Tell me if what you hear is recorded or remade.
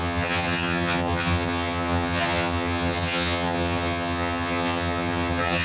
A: remade